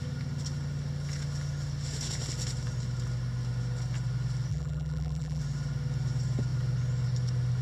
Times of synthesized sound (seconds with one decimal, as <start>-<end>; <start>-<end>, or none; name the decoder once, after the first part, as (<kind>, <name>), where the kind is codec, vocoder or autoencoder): 4.5-5.4 (vocoder, BigVGAN v2)